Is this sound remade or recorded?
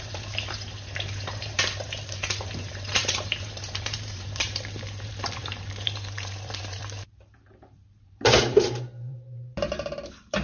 remade